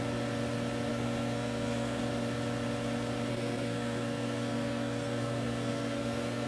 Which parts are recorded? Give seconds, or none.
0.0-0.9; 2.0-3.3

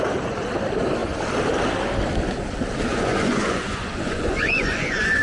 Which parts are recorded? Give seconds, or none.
0.0-2.9

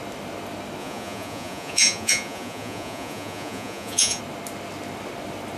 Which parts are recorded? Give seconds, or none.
0.0-0.8; 4.2-5.6

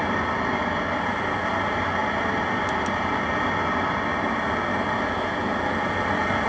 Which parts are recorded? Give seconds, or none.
0.0-6.5

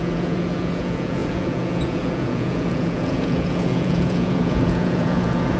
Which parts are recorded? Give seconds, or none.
none

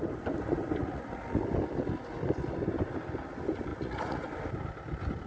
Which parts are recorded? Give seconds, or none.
0.0-0.8; 1.4-3.7; 4.3-5.3